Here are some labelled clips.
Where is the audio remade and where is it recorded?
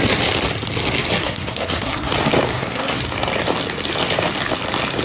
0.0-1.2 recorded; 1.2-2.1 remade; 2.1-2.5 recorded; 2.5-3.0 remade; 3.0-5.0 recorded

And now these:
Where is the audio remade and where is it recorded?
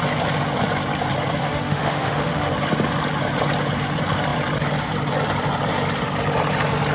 0.0-1.4 recorded; 1.4-2.5 remade; 2.5-6.9 recorded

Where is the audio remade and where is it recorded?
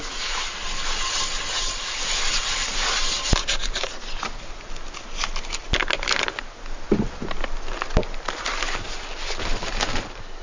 0.0-10.4 recorded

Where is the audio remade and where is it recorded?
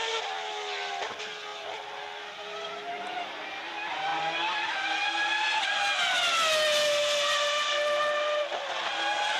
0.0-9.4 recorded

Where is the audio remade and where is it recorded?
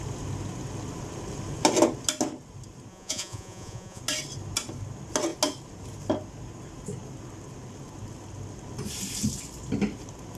0.0-2.9 recorded; 2.9-4.0 remade; 4.0-10.4 recorded